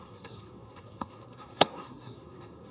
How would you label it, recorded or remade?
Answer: remade